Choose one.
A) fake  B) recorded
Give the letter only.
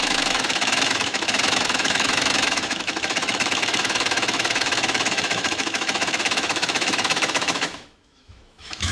A